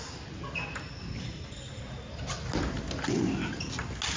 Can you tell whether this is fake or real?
real